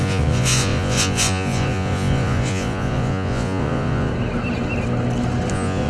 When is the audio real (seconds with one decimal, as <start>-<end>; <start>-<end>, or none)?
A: 4.1-5.5